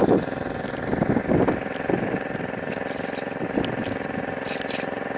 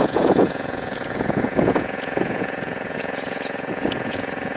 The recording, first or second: first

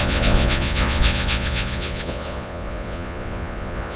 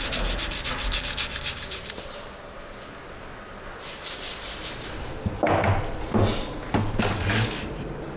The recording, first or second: second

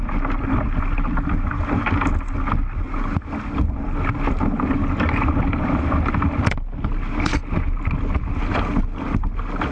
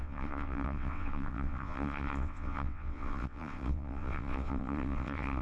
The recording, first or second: first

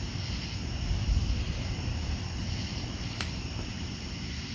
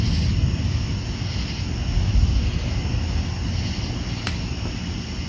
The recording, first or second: second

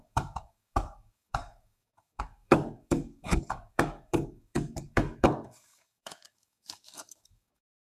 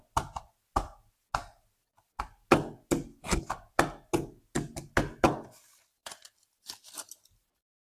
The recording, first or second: second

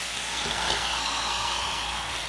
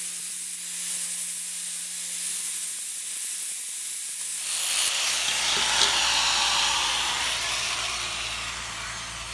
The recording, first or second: second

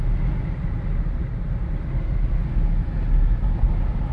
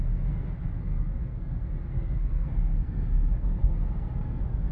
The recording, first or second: first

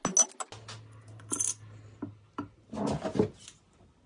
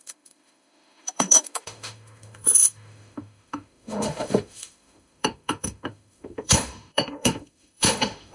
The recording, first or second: first